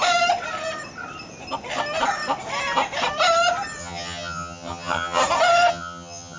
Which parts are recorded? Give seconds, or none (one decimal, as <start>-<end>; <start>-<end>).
0.0-3.8; 5.2-5.7